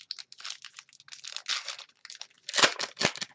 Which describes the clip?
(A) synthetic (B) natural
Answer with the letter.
B